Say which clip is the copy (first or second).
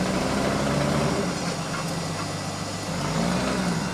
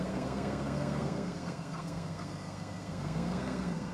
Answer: second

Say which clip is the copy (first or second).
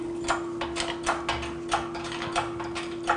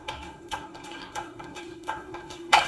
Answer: second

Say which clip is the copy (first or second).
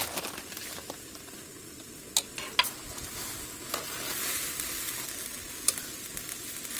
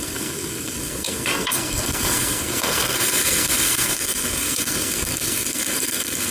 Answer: second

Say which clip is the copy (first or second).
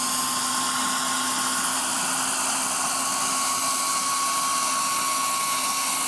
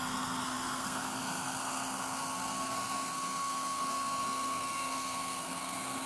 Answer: second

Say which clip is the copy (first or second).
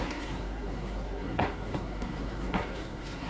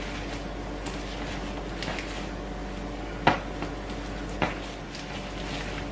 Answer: first